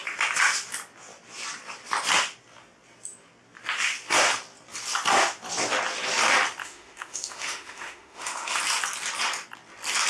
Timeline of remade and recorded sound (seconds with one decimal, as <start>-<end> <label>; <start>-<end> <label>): 0.0-6.6 recorded; 6.6-8.6 remade; 8.6-10.1 recorded